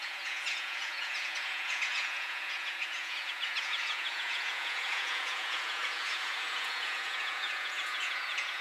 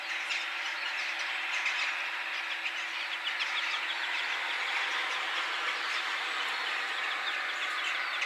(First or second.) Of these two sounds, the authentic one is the second